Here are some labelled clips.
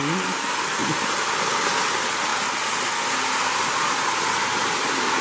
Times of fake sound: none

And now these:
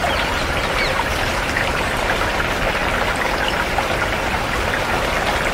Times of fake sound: 0.0-2.3

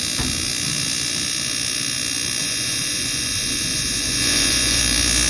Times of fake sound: 2.4-4.8

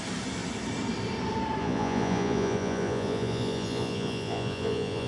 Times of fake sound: 1.6-5.1